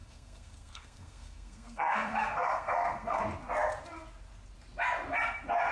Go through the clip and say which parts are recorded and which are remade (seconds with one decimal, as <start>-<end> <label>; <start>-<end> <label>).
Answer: 0.0-3.2 remade; 3.2-5.7 recorded